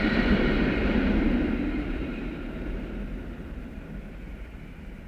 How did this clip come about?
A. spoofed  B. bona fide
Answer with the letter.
A